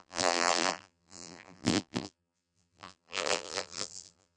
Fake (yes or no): yes